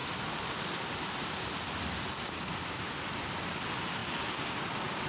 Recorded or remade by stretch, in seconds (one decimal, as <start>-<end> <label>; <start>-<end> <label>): 0.0-3.1 remade; 3.1-4.0 recorded; 4.0-5.1 remade